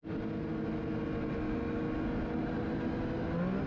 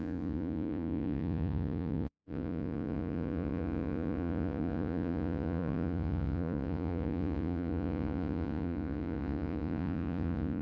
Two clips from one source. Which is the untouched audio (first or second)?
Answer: first